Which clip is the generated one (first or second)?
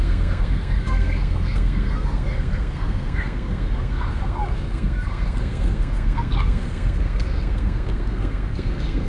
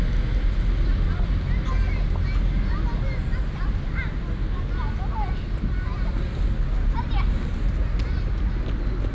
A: first